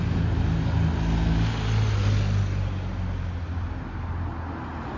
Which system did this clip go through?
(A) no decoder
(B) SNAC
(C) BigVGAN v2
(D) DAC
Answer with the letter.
A